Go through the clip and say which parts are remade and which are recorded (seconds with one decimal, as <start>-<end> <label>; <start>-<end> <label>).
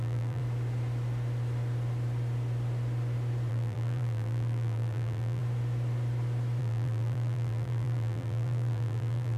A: 0.0-0.4 remade; 0.4-3.5 recorded; 3.5-5.4 remade; 5.4-6.6 recorded; 6.6-9.4 remade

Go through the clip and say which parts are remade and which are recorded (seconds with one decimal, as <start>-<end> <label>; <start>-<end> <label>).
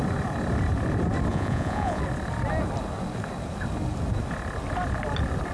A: 0.0-1.3 recorded; 1.3-2.0 remade; 2.0-5.5 recorded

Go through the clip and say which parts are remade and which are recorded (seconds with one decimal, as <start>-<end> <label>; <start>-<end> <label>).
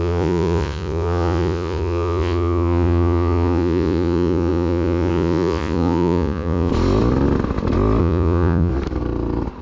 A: 0.0-6.7 remade; 6.7-8.0 recorded; 8.0-8.7 remade; 8.7-9.6 recorded